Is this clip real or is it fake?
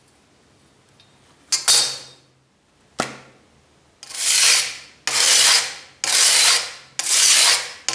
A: real